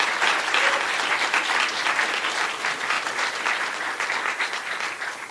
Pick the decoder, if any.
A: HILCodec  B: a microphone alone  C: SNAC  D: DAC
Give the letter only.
B